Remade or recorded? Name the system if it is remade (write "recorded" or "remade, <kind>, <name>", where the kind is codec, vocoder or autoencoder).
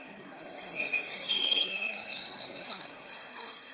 remade, codec, SNAC